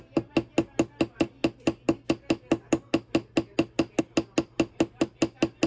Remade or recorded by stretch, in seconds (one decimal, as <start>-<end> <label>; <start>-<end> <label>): 0.0-5.7 recorded